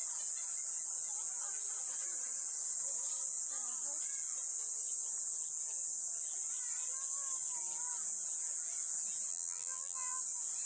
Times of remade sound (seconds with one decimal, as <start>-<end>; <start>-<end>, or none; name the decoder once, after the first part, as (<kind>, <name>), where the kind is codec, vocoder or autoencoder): 9.3-10.2 (vocoder, BigVGAN v2)